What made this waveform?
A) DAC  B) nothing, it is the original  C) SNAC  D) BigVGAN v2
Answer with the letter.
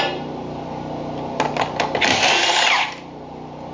B